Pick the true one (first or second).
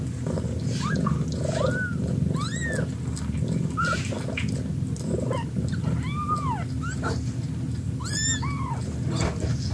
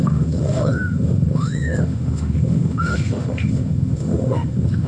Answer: first